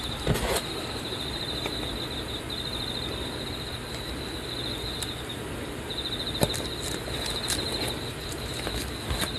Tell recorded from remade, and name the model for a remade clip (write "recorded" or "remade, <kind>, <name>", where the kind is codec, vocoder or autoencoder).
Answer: recorded